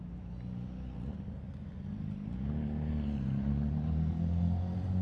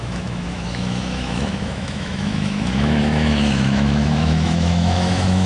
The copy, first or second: second